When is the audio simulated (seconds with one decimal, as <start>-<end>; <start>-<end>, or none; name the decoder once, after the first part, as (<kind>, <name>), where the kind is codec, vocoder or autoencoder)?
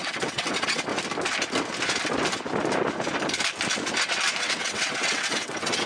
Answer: 0.0-0.9 (vocoder, WaveNeXt); 4.4-5.9